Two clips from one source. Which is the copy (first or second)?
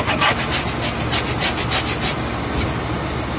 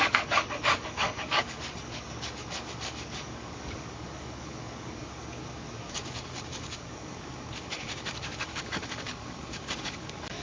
second